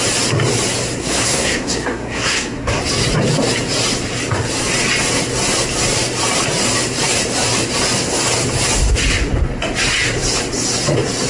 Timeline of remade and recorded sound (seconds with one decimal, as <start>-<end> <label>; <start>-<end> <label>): 0.0-1.0 recorded; 1.0-2.8 remade; 2.8-11.3 recorded